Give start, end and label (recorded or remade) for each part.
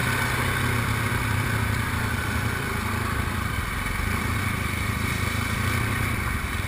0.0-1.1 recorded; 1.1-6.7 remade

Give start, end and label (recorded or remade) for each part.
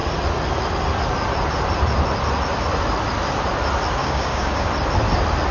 0.0-4.0 recorded; 4.0-4.7 remade; 4.7-5.5 recorded